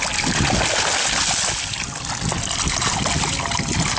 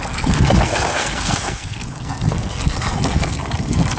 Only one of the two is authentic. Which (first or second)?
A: first